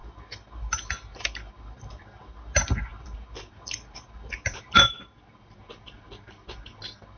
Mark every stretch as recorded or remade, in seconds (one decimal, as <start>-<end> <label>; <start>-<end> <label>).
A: 0.0-7.2 recorded